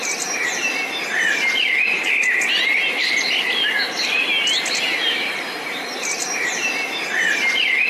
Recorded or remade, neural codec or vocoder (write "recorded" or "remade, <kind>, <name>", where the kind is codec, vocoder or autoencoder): recorded